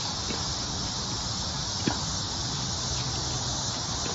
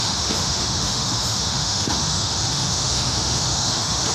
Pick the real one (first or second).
first